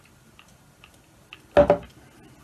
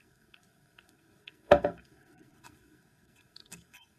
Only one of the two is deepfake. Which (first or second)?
second